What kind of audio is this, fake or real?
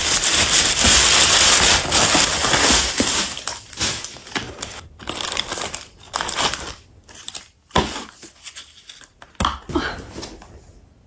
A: real